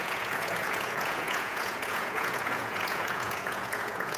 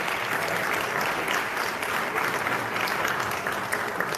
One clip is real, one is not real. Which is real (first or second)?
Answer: second